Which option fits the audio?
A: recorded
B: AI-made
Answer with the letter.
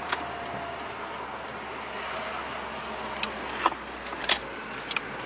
A